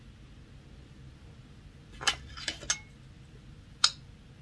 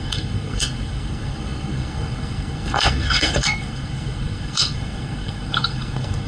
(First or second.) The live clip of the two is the first